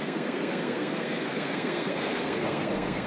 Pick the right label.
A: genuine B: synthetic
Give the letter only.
B